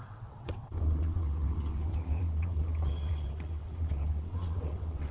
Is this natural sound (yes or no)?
no